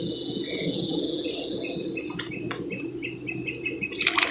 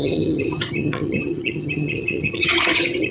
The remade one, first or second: second